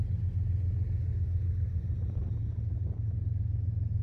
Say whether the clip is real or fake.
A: real